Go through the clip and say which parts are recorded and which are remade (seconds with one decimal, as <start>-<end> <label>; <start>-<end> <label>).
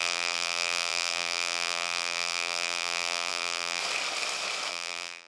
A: 0.0-3.8 remade; 3.8-4.7 recorded; 4.7-5.3 remade